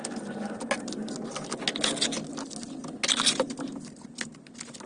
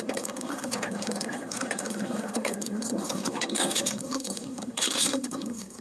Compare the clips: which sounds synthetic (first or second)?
second